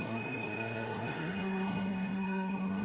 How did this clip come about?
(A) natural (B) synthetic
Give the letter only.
B